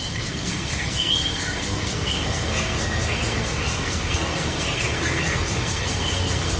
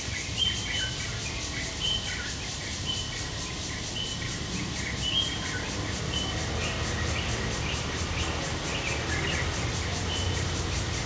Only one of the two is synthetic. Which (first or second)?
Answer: first